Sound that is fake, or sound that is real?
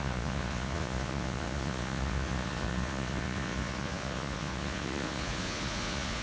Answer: fake